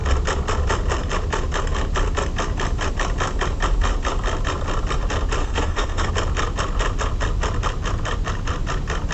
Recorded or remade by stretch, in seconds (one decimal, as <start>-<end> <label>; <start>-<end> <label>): 0.0-5.4 recorded; 5.4-6.1 remade; 6.1-9.1 recorded